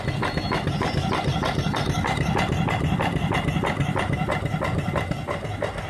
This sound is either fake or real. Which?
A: real